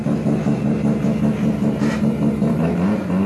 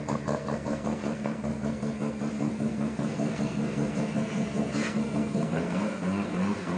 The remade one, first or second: second